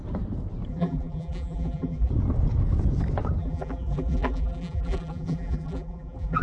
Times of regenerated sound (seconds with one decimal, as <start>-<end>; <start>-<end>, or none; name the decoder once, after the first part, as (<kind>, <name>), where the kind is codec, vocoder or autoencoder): 0.7-2.1 (vocoder, BigVGAN v2); 3.4-6.4